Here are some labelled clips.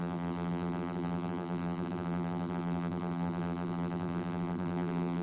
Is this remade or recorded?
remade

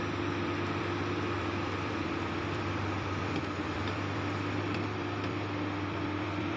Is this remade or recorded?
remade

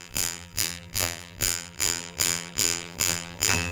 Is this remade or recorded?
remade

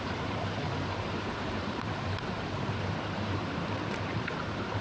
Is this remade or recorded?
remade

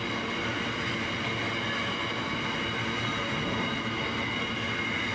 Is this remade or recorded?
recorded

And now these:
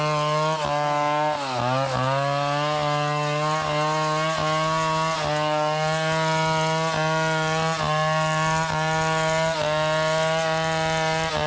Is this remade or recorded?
recorded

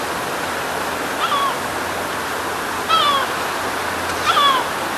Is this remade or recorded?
recorded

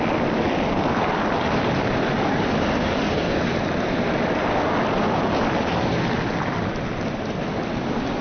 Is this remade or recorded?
remade